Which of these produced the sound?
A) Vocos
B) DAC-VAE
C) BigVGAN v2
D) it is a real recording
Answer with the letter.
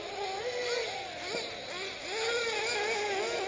D